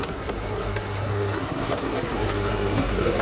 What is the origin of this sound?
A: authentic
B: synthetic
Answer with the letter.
B